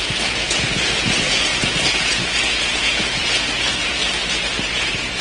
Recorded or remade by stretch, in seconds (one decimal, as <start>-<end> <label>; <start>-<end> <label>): 0.0-4.0 remade; 4.0-4.6 recorded; 4.6-5.2 remade